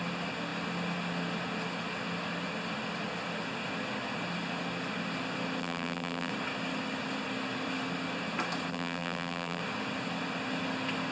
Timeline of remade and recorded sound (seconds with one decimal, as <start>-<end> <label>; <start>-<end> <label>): 0.0-5.6 recorded; 5.6-6.3 remade; 6.3-8.7 recorded; 8.7-9.6 remade; 9.6-11.1 recorded